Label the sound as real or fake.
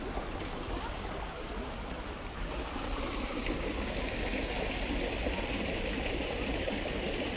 real